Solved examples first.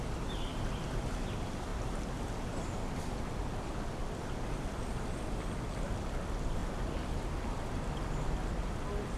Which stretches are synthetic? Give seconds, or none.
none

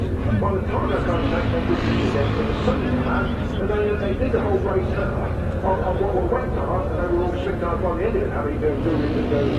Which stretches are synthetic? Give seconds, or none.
3.5-4.7

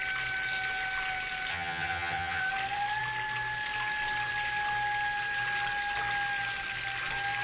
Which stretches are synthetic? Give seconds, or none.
1.5-2.4